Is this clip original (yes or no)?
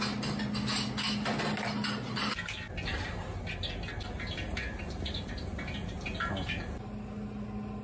yes